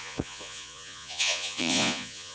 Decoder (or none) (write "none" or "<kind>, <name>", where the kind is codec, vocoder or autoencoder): vocoder, Vocos